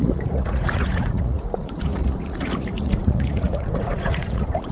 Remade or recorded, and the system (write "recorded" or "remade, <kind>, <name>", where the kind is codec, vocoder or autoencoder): remade, vocoder, Vocos